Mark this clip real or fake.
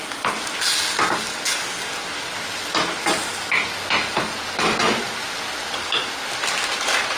real